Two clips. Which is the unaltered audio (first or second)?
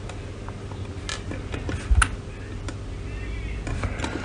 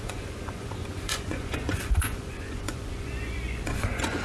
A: first